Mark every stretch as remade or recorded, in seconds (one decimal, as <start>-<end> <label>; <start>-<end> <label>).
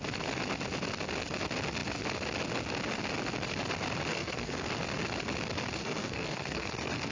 0.0-4.1 recorded; 4.1-4.7 remade; 4.7-5.8 recorded; 5.8-7.1 remade